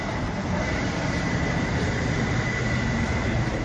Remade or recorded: remade